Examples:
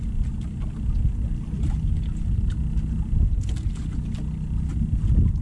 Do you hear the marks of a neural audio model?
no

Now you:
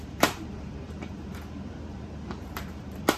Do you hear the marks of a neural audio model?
yes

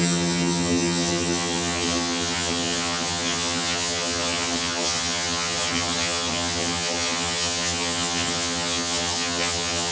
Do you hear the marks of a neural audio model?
yes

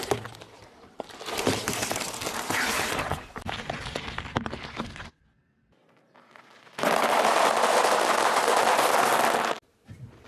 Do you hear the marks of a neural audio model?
no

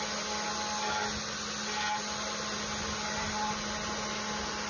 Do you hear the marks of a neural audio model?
no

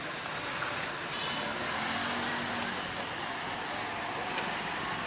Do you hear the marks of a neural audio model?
no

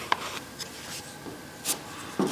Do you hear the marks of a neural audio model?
no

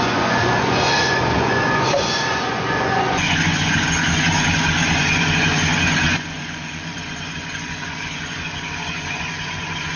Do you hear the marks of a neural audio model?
yes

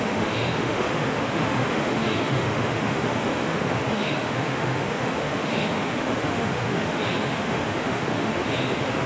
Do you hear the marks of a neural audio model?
yes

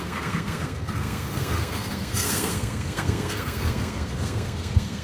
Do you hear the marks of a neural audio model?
yes